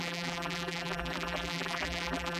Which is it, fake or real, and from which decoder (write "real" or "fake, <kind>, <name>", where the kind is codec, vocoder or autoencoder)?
fake, vocoder, BigVGAN v2